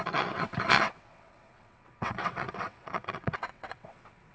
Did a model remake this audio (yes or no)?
yes